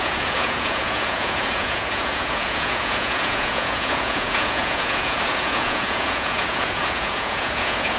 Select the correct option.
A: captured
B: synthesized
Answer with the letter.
B